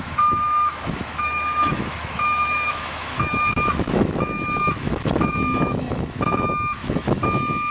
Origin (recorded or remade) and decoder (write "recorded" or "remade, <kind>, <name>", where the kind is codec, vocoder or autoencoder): remade, autoencoder, DAC-VAE